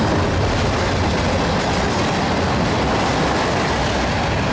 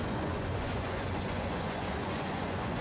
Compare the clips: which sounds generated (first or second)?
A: second